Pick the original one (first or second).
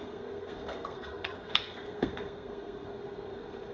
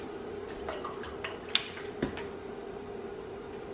second